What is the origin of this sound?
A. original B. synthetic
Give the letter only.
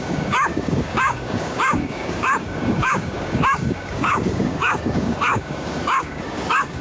B